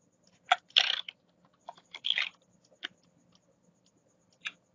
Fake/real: real